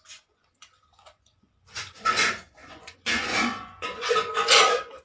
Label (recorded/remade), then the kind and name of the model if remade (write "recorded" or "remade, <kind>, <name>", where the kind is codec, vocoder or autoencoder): remade, vocoder, Vocos